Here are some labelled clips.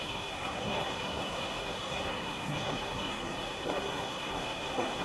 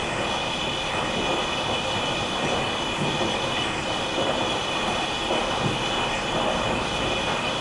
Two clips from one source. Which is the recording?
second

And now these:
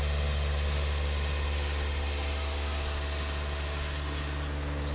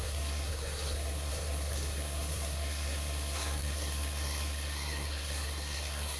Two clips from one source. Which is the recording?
first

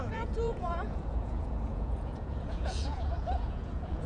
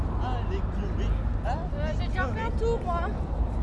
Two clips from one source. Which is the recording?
second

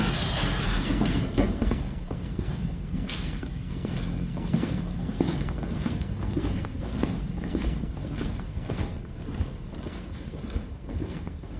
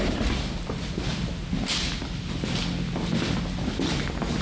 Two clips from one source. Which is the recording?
second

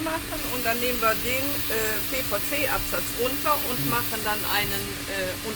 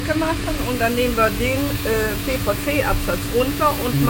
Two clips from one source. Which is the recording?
first